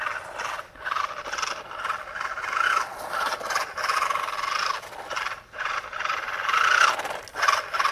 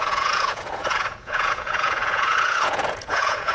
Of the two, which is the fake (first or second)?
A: second